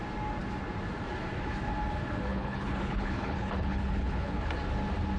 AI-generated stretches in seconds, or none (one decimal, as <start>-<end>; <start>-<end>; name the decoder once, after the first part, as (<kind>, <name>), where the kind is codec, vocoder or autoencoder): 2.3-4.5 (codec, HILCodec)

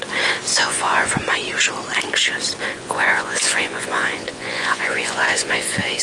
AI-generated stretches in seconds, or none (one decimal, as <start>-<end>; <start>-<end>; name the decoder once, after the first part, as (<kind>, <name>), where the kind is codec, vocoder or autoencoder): 0.5-1.1 (vocoder, Vocos); 2.8-6.0

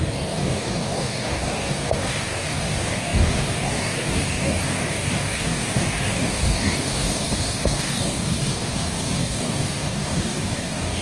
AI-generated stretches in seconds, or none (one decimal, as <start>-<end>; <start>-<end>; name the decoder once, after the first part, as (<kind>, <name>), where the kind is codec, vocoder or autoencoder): 0.0-11.0 (codec, DAC)

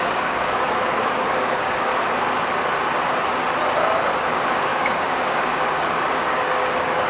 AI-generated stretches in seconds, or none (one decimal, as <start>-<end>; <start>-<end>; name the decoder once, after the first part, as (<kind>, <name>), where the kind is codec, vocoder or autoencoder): 0.0-1.9 (codec, DAC); 4.3-7.1